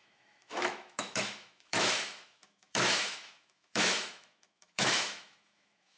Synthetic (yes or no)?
yes